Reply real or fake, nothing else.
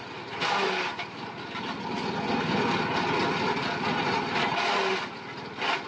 real